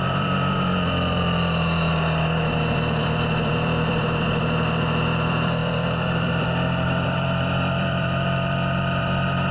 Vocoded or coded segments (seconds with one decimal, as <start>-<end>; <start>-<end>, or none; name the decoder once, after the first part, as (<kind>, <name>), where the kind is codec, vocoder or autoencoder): 0.0-9.5 (vocoder, BigVGAN v2)